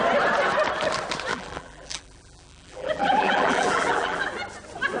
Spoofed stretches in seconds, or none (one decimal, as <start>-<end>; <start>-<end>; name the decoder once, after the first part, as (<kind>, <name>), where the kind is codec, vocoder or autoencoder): 1.3-4.3 (vocoder, BigVGAN v2)